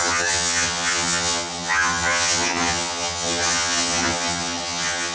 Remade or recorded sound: remade